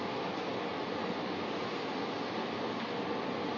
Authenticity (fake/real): real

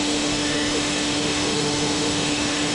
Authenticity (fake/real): fake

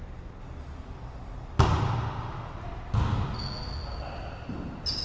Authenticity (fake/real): real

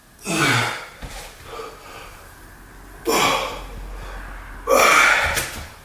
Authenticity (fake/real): real